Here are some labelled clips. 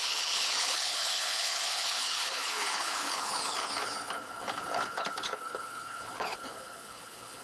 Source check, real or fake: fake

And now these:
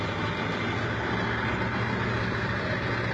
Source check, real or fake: real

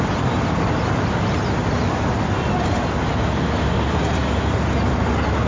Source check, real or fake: real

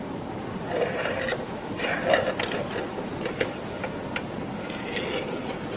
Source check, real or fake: real